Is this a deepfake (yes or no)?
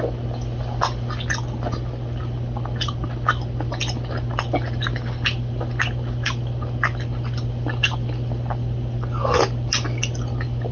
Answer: no